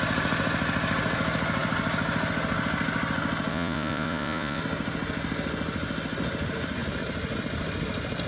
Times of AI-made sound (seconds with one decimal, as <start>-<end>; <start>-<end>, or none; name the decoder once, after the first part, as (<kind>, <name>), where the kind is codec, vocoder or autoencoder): 3.5-4.6 (vocoder, Vocos)

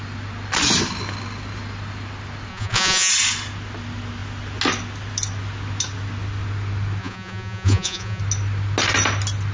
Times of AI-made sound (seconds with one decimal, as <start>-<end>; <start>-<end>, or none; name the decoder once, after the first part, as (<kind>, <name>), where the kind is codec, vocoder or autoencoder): 2.5-3.1 (vocoder, Vocos); 7.0-8.2

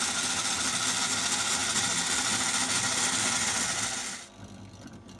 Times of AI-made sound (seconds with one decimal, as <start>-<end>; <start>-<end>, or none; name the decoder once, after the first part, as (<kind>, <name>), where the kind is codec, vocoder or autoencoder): none

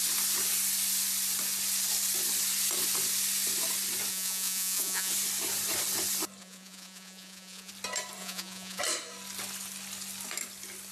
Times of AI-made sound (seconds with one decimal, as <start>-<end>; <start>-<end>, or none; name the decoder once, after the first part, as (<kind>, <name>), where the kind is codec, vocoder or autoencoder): 4.1-5.1 (vocoder, Vocos); 6.4-7.7; 8.2-8.8

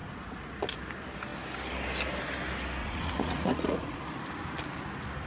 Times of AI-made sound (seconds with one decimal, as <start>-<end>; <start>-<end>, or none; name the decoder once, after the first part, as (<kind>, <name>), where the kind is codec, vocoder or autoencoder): 0.0-0.8 (vocoder, Vocos); 2.8-4.0

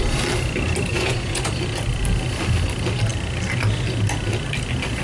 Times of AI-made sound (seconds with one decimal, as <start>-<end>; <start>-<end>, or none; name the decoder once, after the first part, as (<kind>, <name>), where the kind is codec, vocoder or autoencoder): 0.9-1.5 (vocoder, Vocos)

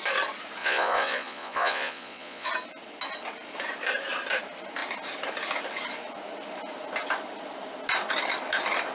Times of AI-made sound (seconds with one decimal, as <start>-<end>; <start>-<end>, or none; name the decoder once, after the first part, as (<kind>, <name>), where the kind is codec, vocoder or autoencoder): 0.6-2.5 (vocoder, Vocos)

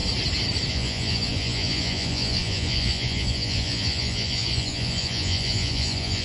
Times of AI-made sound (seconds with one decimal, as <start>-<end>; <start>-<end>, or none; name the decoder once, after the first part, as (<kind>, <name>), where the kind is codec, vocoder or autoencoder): 0.7-6.2 (vocoder, Vocos)